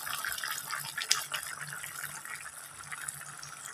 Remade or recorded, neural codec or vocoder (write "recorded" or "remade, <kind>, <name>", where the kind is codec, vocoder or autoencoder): recorded